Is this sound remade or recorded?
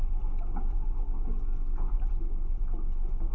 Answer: recorded